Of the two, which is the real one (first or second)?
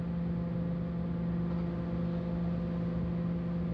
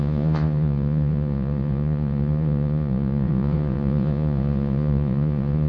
first